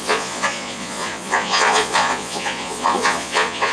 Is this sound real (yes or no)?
no